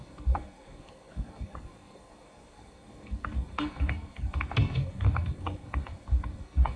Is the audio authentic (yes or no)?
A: no